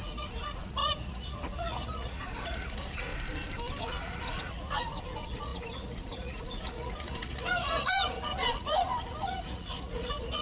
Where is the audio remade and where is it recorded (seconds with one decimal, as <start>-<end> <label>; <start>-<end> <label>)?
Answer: 0.0-3.1 remade; 3.1-3.8 recorded; 3.8-10.4 remade